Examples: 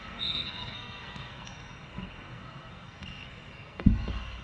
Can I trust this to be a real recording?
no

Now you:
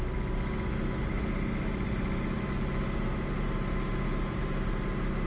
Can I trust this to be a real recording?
yes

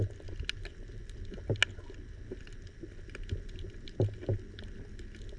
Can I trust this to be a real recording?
yes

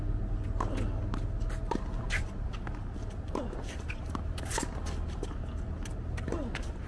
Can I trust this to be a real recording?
yes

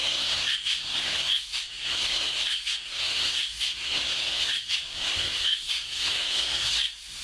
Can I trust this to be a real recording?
no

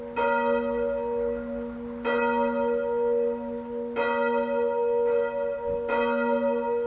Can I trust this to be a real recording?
yes